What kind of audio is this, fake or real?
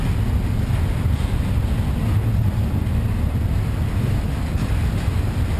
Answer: real